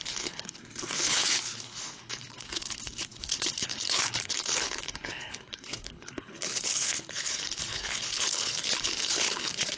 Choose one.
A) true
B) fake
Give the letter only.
B